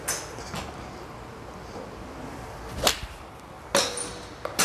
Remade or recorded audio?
recorded